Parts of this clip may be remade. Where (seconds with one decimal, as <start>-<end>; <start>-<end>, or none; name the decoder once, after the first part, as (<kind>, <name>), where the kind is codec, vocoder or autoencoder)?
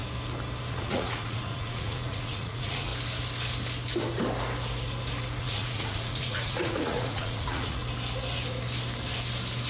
0.7-2.9 (vocoder, Vocos); 5.4-7.8